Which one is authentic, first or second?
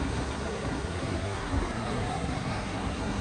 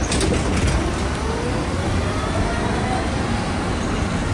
second